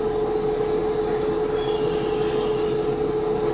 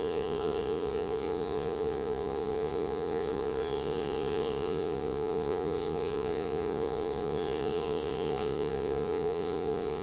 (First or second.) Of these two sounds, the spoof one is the second